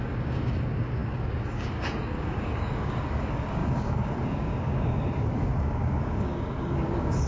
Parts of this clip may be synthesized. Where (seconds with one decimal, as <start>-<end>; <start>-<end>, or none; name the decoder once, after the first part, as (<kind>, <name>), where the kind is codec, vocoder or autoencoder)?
0.0-7.3 (codec, DAC)